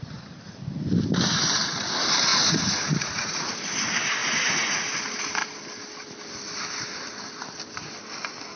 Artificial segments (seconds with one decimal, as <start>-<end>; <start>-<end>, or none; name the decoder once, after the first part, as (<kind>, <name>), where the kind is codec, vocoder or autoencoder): 2.3-3.5 (vocoder, Vocos); 4.2-4.8